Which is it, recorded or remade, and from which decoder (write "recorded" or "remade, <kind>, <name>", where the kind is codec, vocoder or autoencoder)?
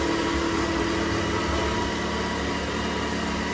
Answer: recorded